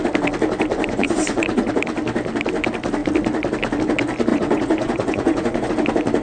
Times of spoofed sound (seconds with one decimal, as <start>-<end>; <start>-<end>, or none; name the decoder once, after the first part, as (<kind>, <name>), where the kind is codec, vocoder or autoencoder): 0.7-1.7 (vocoder, Vocos); 4.3-5.7